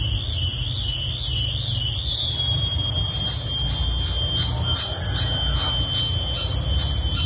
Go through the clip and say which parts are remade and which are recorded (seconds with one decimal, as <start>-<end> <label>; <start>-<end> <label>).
0.0-7.3 recorded